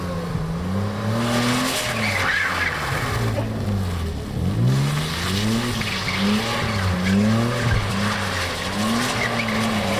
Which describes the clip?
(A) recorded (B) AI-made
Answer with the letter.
A